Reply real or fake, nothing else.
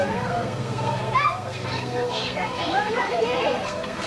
fake